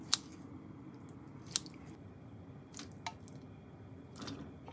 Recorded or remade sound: recorded